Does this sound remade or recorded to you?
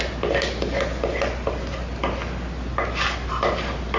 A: recorded